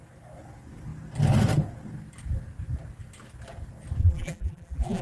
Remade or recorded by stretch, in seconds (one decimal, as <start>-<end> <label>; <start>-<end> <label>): 0.0-4.0 recorded; 4.0-5.0 remade